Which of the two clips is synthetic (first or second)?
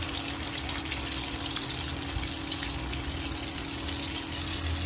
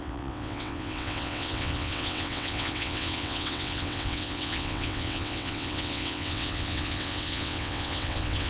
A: second